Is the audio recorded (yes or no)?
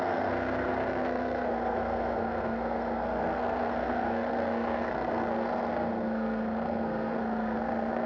no